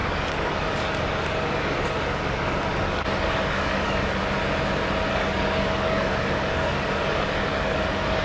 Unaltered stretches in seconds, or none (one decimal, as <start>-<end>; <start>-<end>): 4.2-5.1